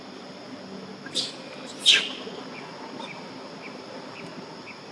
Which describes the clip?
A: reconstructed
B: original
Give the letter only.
B